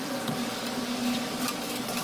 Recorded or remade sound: remade